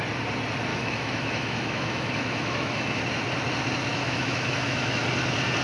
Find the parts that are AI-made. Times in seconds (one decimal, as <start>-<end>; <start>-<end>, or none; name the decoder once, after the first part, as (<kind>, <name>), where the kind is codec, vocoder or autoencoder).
0.7-3.0 (autoencoder, DAC-VAE); 3.9-5.0